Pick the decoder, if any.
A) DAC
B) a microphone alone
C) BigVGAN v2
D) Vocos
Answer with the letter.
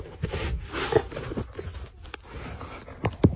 B